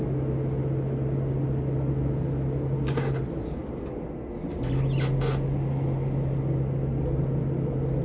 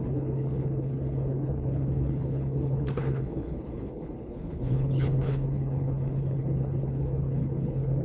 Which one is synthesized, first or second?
second